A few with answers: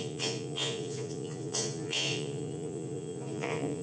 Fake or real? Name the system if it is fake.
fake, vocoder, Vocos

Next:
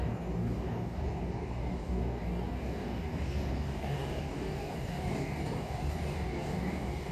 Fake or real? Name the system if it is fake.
fake, codec, DAC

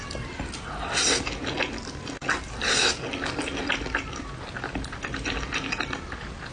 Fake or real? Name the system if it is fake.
real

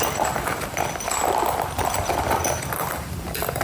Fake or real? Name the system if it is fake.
fake, vocoder, BigVGAN v2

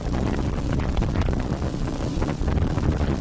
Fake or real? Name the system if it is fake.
fake, vocoder, Vocos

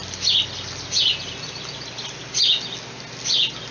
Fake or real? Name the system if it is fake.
real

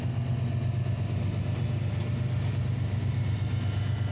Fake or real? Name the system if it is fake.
real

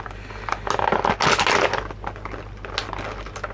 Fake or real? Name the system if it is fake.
real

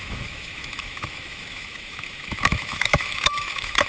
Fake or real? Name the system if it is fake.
fake, autoencoder, DAC-VAE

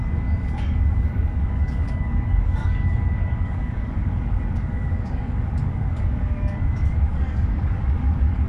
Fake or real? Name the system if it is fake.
fake, codec, DAC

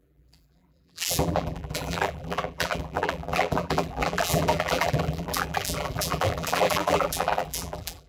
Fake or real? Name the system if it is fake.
fake, vocoder, BigVGAN v2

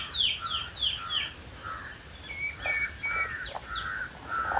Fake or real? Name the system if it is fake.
real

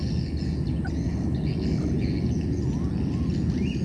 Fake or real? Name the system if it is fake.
real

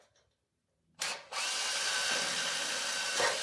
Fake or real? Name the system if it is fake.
real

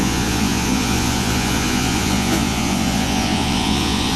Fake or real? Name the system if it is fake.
fake, vocoder, Vocos